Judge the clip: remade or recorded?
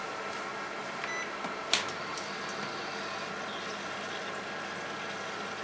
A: recorded